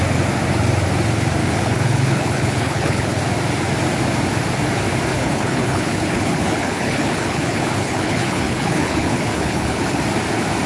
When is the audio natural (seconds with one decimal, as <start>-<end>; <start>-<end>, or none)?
0.0-1.4; 3.2-5.1; 10.0-10.7

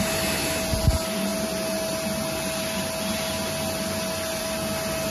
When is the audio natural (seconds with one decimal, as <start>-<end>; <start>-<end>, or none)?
0.0-5.1

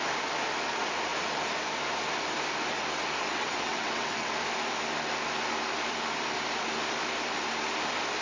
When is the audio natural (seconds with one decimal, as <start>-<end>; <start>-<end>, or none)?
0.0-3.2; 4.3-8.2

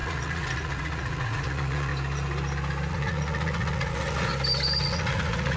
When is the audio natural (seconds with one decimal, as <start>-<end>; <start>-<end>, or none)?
1.9-2.9; 4.3-4.8

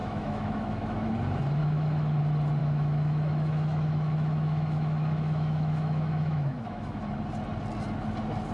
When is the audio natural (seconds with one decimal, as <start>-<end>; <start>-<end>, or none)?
1.1-1.6; 2.2-2.6; 7.0-8.5

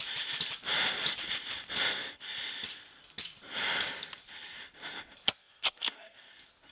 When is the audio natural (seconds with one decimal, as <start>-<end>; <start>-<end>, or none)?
0.0-5.4; 6.3-6.7

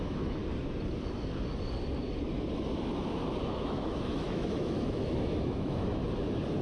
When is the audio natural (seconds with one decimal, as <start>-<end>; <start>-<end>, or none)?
0.4-3.4; 6.0-6.6

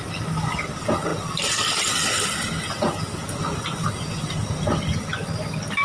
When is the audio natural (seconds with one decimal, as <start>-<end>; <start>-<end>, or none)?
0.0-5.8